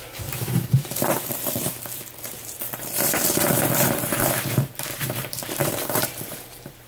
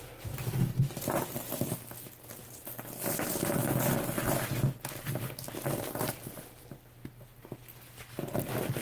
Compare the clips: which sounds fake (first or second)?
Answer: first